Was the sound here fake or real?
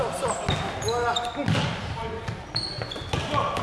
real